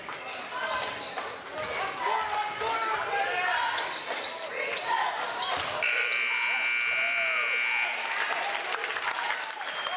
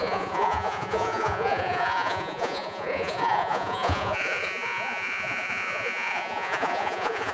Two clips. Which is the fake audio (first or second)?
second